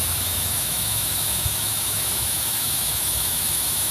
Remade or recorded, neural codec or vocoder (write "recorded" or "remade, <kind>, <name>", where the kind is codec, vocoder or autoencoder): remade, autoencoder, DAC-VAE